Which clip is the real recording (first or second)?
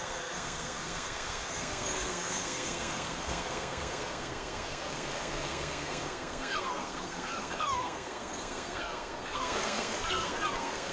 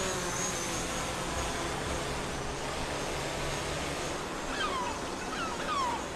second